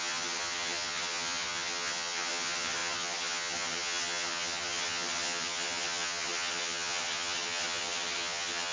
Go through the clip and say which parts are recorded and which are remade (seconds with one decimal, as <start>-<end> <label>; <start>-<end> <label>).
0.0-8.7 remade